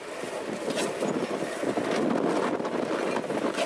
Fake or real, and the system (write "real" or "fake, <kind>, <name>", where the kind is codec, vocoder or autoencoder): real